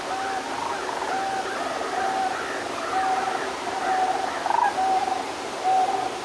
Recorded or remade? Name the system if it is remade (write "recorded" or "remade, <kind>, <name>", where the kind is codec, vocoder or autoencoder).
remade, vocoder, BigVGAN v2